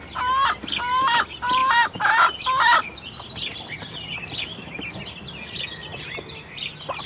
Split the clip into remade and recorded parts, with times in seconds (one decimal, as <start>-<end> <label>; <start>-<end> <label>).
0.0-7.1 recorded